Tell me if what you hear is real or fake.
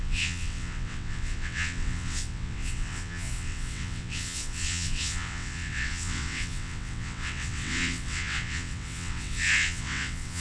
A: fake